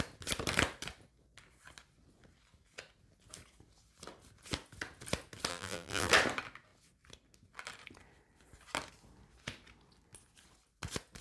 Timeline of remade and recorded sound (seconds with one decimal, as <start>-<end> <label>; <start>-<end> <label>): 0.0-5.5 recorded; 5.5-6.1 remade; 6.1-11.2 recorded